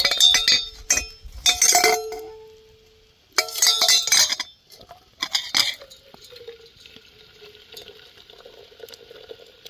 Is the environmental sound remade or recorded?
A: recorded